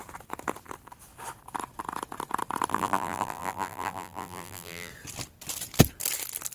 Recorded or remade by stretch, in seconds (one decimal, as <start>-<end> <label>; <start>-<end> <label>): 0.0-2.7 recorded; 2.7-4.9 remade; 4.9-6.5 recorded